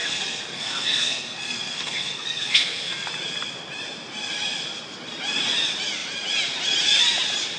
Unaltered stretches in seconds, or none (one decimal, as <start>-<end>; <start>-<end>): 3.1-7.6

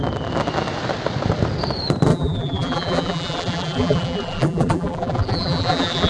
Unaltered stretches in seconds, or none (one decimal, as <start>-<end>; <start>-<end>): 0.0-2.1

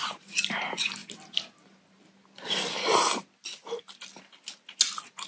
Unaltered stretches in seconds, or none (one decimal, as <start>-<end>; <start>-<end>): 0.0-5.3

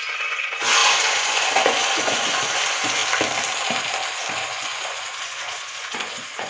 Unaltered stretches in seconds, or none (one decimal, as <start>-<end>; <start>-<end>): 3.0-4.3